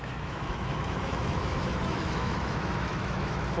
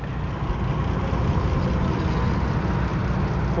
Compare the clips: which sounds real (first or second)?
second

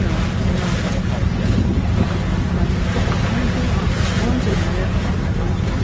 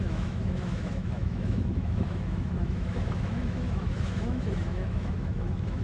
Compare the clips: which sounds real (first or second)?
first